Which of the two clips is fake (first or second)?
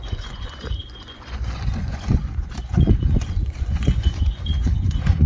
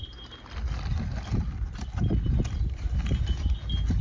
first